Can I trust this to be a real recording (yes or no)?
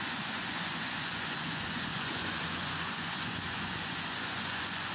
no